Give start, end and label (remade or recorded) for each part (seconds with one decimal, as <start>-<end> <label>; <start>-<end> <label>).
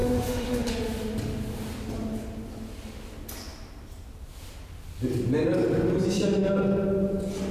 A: 0.0-0.7 remade; 0.7-7.5 recorded